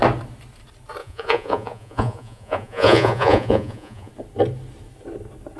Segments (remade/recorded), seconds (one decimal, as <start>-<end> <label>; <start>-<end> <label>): 0.0-1.0 recorded; 1.0-4.1 remade; 4.1-5.6 recorded